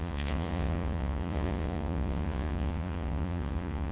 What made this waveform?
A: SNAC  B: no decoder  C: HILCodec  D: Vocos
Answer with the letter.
D